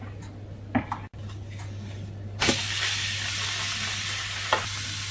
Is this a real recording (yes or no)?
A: yes